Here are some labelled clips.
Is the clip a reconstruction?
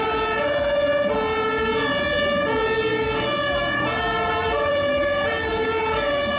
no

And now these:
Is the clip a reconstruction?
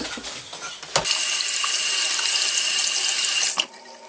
no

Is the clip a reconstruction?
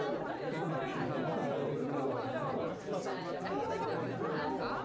no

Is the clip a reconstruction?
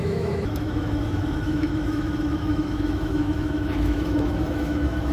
yes